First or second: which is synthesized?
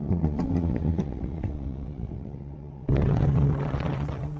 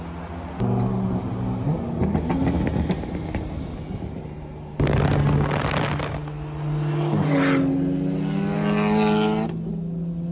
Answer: first